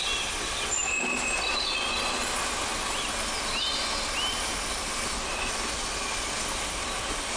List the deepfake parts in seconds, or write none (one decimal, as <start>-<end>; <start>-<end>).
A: none